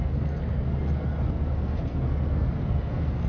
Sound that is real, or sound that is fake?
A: fake